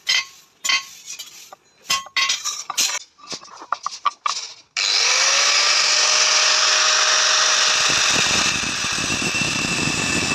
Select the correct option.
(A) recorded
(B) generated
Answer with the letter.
A